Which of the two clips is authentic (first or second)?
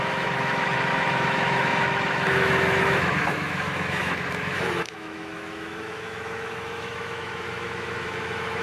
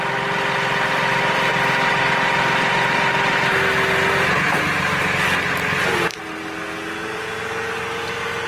second